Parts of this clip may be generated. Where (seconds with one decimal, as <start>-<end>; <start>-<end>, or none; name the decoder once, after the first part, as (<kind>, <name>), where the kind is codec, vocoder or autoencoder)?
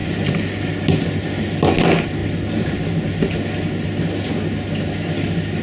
2.2-3.4 (vocoder, BigVGAN v2)